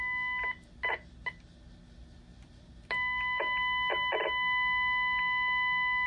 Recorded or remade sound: recorded